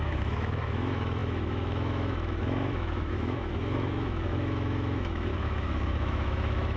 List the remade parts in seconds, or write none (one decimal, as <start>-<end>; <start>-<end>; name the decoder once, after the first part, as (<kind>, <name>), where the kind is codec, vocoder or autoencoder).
0.0-6.8 (autoencoder, DAC-VAE)